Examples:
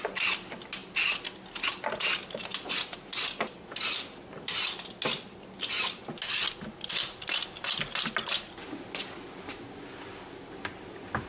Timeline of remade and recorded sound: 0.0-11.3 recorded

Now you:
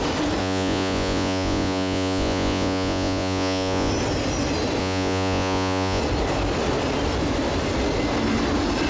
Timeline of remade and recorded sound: 0.0-0.4 recorded; 0.4-3.9 remade; 3.9-4.8 recorded; 4.8-6.0 remade; 6.0-8.9 recorded

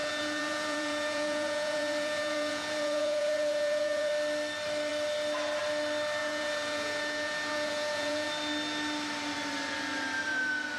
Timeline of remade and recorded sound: 0.0-4.1 remade; 4.1-6.2 recorded; 6.2-8.3 remade; 8.3-10.8 recorded

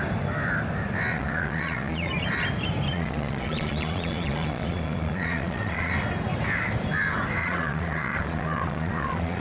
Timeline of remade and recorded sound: 0.0-1.1 recorded; 1.1-2.1 remade; 2.1-2.9 recorded; 2.9-5.9 remade; 5.9-7.4 recorded; 7.4-9.4 remade

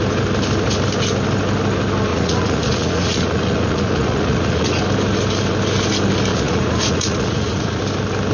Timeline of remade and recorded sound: 0.0-2.1 recorded; 2.1-4.8 remade; 4.8-6.3 recorded; 6.3-7.8 remade; 7.8-8.3 recorded

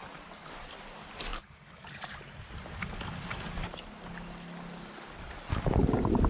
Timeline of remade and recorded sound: 0.0-6.3 recorded

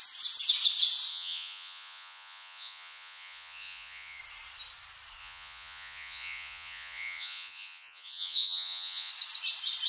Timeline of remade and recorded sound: 0.0-1.1 recorded; 1.1-4.2 remade; 4.2-5.2 recorded; 5.2-9.1 remade; 9.1-9.9 recorded